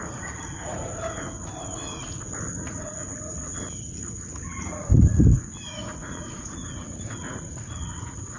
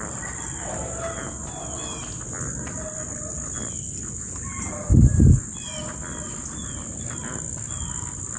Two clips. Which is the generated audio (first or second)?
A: first